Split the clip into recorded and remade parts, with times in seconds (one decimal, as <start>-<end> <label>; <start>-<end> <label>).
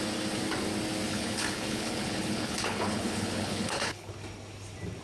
0.0-1.1 recorded; 1.1-4.1 remade; 4.1-5.0 recorded